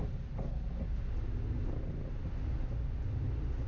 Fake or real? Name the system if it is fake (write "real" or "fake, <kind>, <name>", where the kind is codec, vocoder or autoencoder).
real